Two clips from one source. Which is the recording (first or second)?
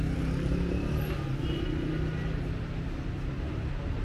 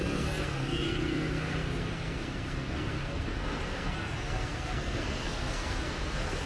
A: first